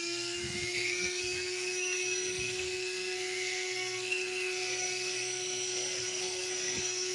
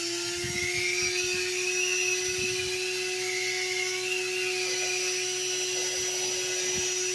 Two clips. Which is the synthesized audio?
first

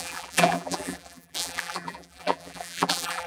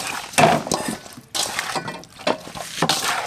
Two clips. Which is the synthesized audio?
first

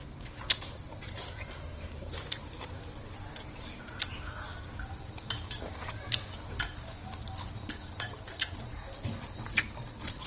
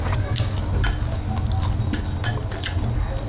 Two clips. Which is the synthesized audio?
first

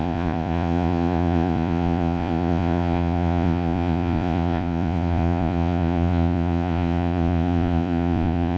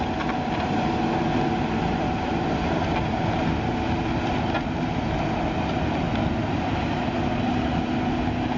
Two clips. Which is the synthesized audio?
first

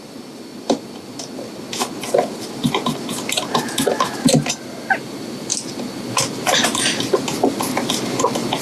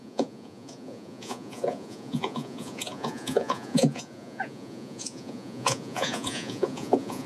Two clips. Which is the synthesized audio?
second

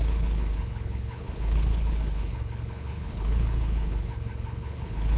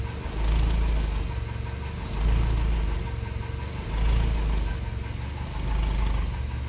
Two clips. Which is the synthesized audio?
first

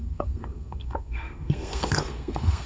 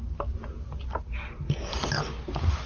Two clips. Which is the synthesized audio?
first